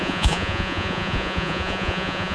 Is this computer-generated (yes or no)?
yes